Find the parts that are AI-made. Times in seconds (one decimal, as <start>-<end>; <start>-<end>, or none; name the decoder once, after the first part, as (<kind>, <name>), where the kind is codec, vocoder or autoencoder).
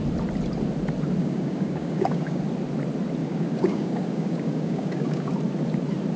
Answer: 1.2-2.4 (codec, DAC); 3.2-5.3